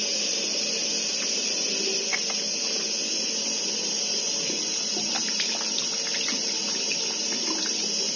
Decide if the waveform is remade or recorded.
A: recorded